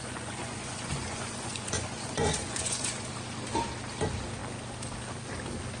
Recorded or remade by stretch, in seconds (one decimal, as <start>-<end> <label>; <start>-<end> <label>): 0.0-3.1 remade; 3.1-5.8 recorded